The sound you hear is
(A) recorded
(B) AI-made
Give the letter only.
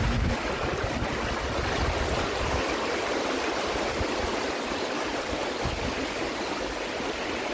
A